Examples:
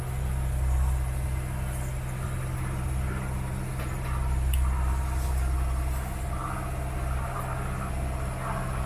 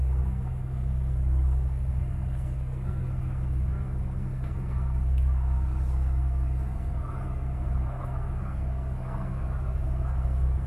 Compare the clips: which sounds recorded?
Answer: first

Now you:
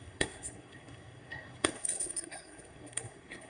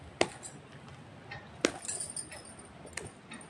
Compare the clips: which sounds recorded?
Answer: second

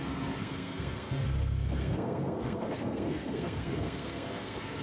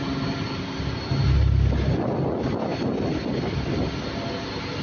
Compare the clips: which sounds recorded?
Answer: second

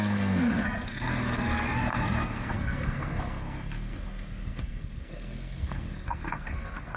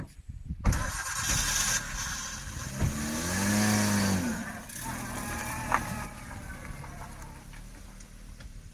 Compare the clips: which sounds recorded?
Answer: second